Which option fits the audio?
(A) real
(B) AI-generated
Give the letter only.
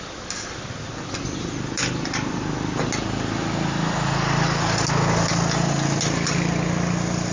A